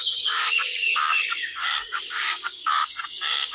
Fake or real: fake